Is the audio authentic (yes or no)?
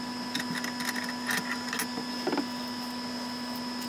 yes